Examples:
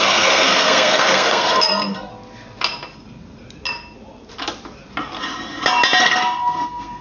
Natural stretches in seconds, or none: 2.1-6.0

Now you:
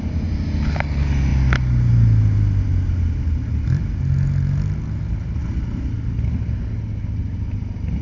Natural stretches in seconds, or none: 0.0-8.0